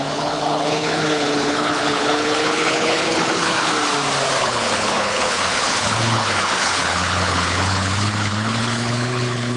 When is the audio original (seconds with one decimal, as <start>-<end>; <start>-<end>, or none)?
3.7-4.4